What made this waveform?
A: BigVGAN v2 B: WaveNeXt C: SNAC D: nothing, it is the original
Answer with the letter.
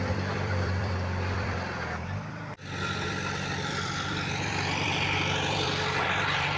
A